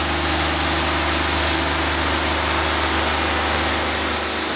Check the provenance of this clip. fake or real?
real